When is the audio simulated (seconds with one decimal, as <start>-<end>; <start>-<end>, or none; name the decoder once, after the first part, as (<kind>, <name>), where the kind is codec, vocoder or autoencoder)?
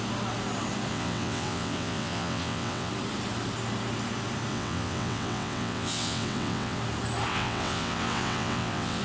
0.9-2.9 (vocoder, WaveNeXt); 4.5-6.8; 7.3-9.0